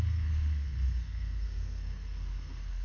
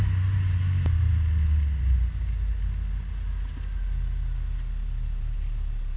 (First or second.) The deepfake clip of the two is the first